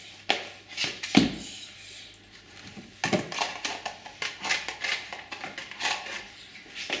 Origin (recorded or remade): recorded